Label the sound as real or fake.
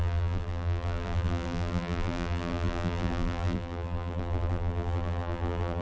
fake